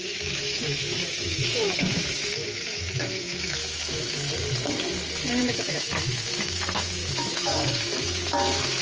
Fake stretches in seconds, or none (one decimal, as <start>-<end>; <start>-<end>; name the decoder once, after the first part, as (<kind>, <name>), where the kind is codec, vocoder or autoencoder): 0.0-4.3 (autoencoder, DAC-VAE); 5.4-8.8

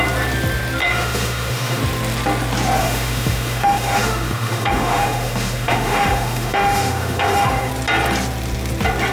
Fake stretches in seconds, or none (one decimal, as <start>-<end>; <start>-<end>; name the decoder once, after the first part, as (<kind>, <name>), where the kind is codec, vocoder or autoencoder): 0.8-1.8 (autoencoder, DAC-VAE); 2.8-7.7

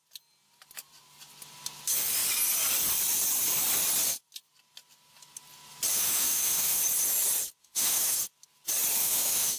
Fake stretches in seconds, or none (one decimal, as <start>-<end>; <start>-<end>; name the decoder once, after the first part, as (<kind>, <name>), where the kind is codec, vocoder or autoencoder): 5.9-6.8 (autoencoder, DAC-VAE); 7.6-8.2; 9.0-9.6

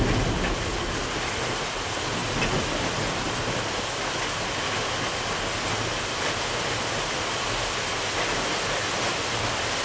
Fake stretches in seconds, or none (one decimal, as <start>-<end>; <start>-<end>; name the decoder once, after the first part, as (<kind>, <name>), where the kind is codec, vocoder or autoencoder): none

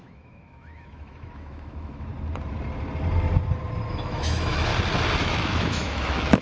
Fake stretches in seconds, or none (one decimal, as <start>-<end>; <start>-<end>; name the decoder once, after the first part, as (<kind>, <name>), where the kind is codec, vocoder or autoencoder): 0.0-2.1 (autoencoder, DAC-VAE); 3.9-4.7; 5.2-6.4

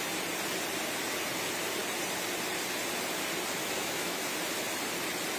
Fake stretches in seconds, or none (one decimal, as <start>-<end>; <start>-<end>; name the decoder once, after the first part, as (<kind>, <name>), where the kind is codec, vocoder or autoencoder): 3.6-4.2 (autoencoder, DAC-VAE)

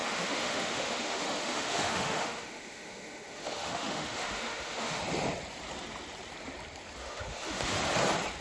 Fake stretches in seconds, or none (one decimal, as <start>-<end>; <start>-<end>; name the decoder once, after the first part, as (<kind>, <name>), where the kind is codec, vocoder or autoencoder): 0.0-5.0 (autoencoder, DAC-VAE); 7.0-7.8

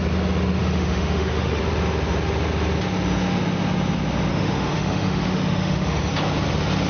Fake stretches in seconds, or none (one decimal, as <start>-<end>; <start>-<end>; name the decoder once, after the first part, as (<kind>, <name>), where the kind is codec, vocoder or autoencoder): 0.6-1.6 (autoencoder, DAC-VAE); 4.3-6.1